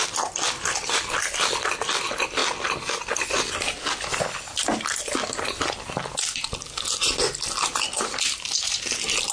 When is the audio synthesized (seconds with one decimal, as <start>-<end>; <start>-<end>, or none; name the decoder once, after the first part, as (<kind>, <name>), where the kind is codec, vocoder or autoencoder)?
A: none